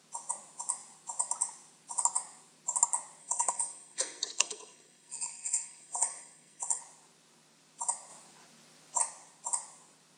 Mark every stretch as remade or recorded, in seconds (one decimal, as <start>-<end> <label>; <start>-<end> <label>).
0.0-3.2 recorded; 3.2-6.8 remade; 6.8-10.2 recorded